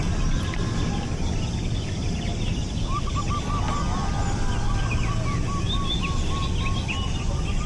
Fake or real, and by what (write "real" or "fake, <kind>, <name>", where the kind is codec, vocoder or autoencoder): real